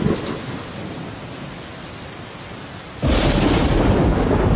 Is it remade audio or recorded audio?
recorded